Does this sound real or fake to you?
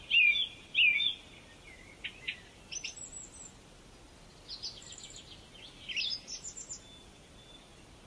real